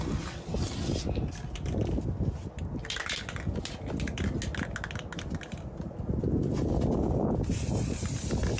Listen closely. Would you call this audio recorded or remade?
recorded